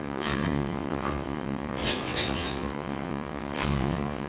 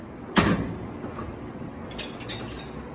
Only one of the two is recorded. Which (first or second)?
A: second